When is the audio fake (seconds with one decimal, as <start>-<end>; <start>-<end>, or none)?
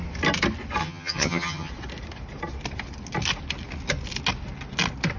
0.8-1.7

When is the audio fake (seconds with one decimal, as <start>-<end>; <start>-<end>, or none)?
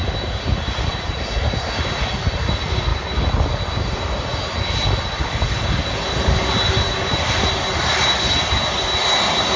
none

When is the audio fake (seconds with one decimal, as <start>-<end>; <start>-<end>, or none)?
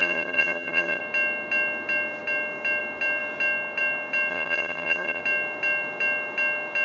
0.0-1.0; 4.3-5.2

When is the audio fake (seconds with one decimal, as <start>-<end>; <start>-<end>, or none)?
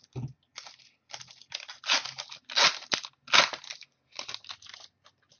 none